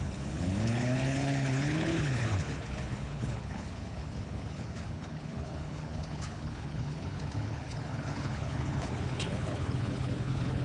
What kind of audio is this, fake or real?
fake